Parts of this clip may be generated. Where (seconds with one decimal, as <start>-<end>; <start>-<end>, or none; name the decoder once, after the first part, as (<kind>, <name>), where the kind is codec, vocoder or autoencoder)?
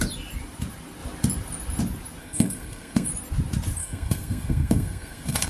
2.2-3.1 (codec, SNAC); 3.8-5.5